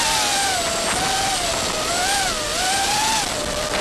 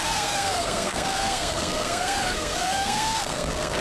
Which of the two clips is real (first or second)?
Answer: first